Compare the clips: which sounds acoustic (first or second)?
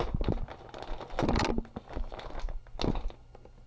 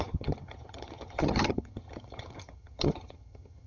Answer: first